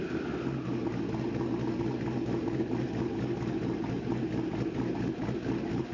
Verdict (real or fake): real